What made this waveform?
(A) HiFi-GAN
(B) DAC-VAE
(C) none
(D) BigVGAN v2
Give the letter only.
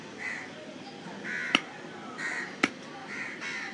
C